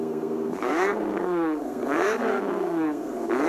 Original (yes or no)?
no